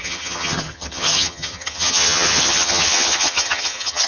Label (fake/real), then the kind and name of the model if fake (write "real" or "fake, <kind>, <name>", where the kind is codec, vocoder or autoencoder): fake, vocoder, HiFi-GAN